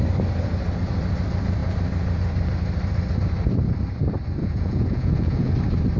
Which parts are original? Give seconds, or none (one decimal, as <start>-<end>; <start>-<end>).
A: 0.0-4.4; 5.5-6.0